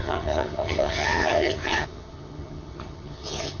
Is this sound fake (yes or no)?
yes